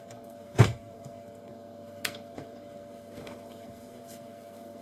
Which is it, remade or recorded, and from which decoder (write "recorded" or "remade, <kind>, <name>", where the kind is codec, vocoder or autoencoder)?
remade, codec, SNAC